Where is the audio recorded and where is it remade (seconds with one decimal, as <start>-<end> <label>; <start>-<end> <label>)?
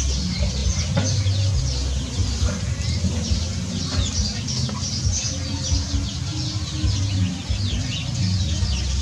0.0-9.0 recorded